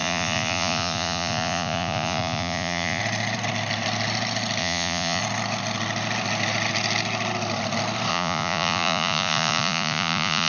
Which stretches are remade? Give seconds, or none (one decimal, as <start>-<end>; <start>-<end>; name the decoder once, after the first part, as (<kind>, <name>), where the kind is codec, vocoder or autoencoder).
0.0-3.0 (vocoder, Vocos); 4.6-5.2; 8.1-10.5